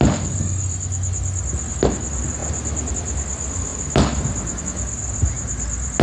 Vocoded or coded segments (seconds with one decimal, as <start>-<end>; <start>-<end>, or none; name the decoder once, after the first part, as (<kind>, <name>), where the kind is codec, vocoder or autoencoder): none